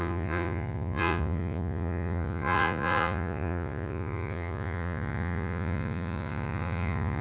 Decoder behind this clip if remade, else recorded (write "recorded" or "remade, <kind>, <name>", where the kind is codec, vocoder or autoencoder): remade, vocoder, Vocos